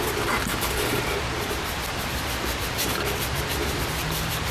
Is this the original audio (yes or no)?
no